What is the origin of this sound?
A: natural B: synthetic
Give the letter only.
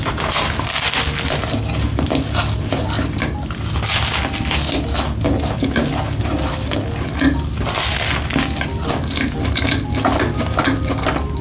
A